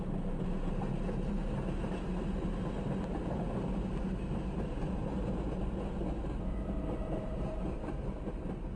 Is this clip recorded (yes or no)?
yes